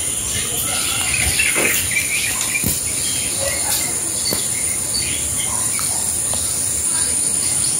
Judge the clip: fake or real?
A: fake